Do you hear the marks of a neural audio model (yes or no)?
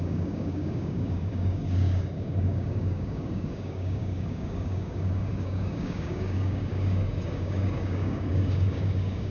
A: yes